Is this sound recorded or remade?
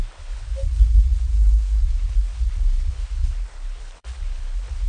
remade